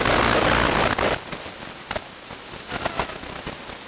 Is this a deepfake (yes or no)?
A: no